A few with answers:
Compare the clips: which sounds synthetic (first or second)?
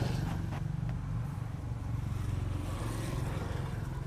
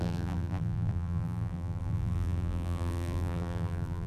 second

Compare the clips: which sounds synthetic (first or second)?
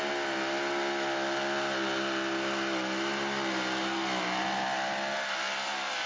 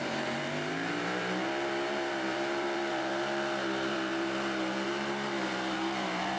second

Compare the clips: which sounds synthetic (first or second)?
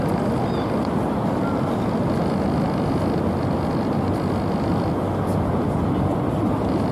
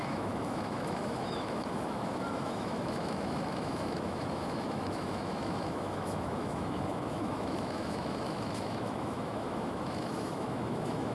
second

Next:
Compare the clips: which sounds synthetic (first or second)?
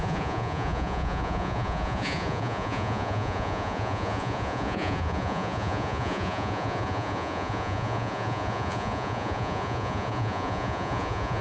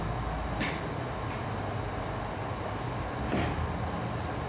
first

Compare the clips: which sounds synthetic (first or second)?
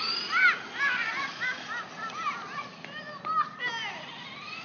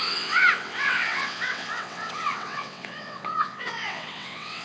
second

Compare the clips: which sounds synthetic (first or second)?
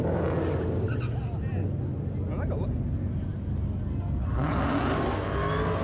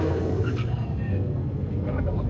second